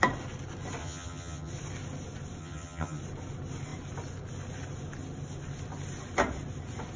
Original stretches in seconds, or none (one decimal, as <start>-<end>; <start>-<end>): 0.0-0.8; 1.5-2.4; 3.0-7.0